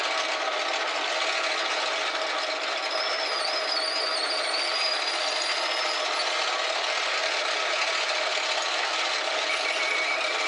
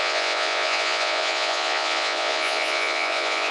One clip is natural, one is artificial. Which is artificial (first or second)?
second